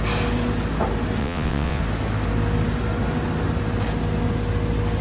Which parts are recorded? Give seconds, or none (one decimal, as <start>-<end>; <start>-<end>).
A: 0.0-1.2; 1.8-5.0

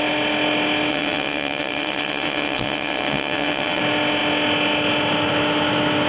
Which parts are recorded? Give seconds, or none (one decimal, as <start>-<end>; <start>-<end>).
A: 0.0-0.9; 3.8-6.1

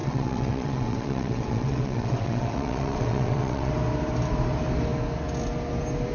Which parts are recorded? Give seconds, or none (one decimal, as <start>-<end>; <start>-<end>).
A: 3.7-6.1

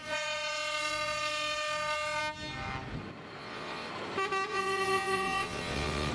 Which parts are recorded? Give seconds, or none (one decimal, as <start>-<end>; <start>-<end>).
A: 2.2-3.4; 3.9-4.5